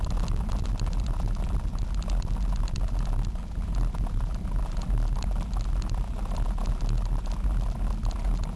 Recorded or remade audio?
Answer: recorded